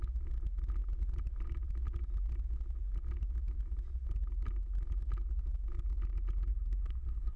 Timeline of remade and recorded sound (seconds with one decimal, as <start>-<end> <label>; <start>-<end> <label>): 0.0-6.5 recorded; 6.5-7.4 remade